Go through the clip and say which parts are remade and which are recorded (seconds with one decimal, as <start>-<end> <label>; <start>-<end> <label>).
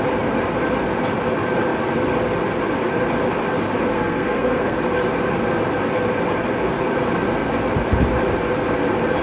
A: 0.0-3.9 recorded; 3.9-4.8 remade; 4.8-9.2 recorded